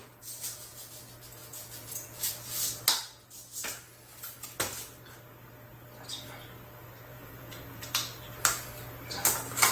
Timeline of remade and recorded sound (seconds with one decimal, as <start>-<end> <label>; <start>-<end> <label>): 0.0-0.9 remade; 0.9-1.4 recorded; 1.4-2.3 remade; 2.3-7.1 recorded; 7.1-7.8 remade; 7.8-9.7 recorded